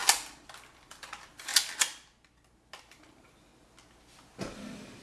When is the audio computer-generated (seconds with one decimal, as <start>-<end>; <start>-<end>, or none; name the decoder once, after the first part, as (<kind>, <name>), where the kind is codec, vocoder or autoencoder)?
0.7-1.5 (vocoder, BigVGAN v2); 2.8-3.5